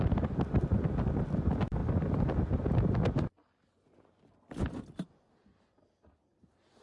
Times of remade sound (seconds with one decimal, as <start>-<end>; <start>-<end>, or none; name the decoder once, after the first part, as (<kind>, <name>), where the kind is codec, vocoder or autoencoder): none